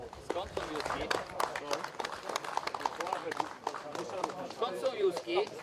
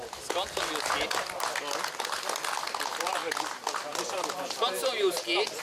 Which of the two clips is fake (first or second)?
first